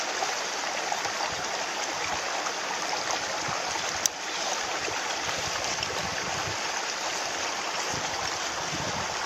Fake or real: fake